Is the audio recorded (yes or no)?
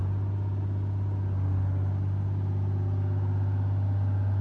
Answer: yes